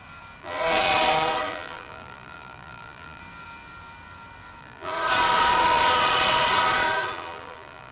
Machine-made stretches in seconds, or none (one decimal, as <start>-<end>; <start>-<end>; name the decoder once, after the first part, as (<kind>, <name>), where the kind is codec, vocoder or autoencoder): 0.4-3.2 (vocoder, Vocos); 4.6-7.9